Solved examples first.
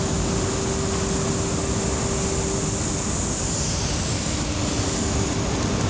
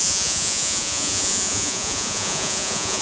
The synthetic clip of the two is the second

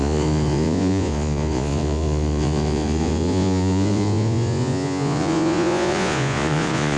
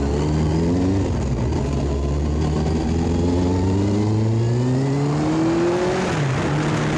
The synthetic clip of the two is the first